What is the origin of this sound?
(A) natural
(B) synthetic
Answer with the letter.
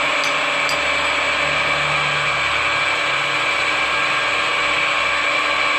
A